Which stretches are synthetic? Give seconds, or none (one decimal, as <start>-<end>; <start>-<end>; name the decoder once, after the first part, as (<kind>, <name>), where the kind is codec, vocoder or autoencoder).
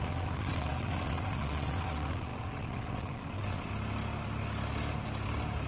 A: 0.0-3.7 (vocoder, WaveNeXt)